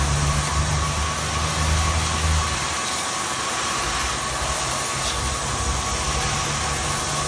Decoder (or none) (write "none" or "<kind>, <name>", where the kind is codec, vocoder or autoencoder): none